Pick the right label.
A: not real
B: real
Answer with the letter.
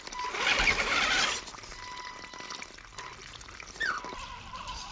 B